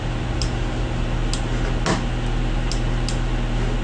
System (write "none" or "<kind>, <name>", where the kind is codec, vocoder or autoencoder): none